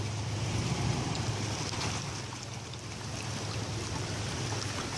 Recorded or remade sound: recorded